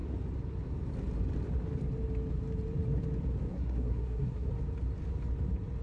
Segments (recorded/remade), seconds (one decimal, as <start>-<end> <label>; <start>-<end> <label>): 0.0-3.5 recorded; 3.5-4.5 remade; 4.5-5.8 recorded